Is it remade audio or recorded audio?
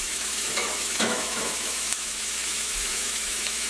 remade